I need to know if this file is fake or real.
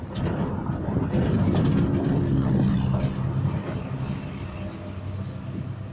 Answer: real